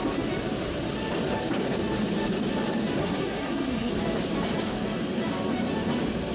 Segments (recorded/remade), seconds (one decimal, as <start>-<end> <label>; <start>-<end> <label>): 0.0-3.0 recorded; 3.0-3.9 remade; 3.9-6.3 recorded